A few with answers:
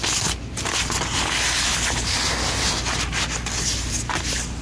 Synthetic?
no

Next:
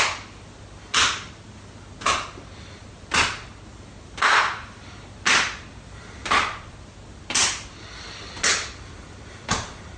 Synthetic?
no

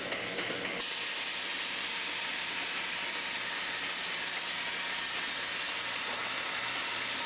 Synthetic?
no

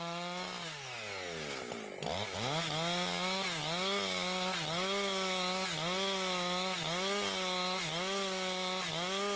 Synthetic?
no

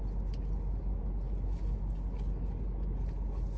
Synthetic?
no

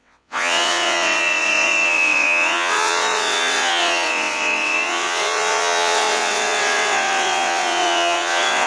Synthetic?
yes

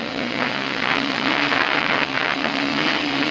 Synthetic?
yes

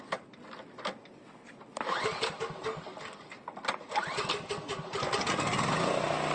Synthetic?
no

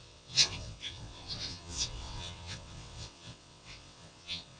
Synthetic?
yes